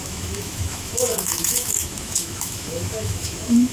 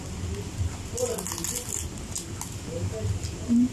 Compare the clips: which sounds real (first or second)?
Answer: second